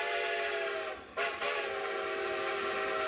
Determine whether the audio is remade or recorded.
recorded